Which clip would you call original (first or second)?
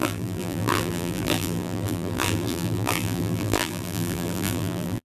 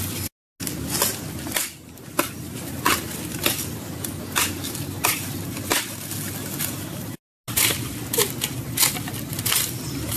second